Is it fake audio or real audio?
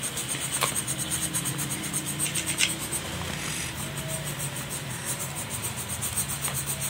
real